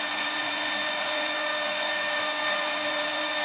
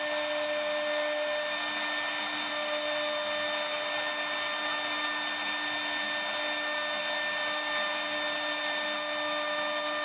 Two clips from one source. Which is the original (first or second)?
second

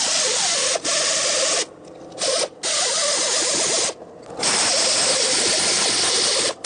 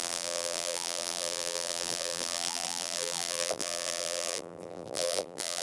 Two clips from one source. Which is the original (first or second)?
first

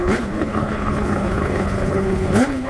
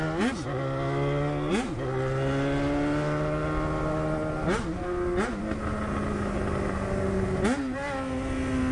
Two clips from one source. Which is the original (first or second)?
second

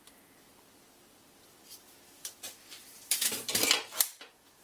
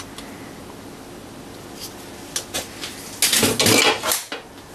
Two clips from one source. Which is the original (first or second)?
second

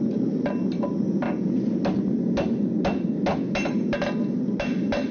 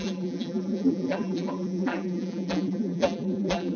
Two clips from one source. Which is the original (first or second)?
first